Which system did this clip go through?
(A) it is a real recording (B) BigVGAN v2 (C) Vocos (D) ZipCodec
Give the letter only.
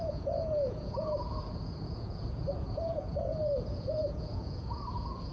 C